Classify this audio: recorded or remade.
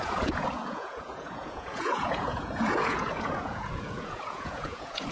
remade